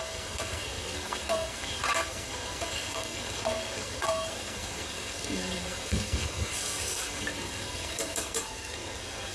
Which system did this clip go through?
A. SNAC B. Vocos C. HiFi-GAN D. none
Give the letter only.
A